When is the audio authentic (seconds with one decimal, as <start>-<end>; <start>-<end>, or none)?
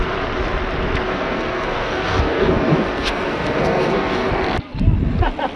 0.0-1.1; 4.3-5.6